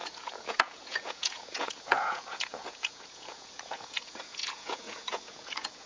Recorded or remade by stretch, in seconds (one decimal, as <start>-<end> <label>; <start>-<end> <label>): 0.0-5.9 remade